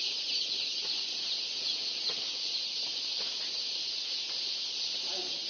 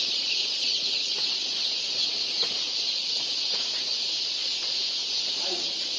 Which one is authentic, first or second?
first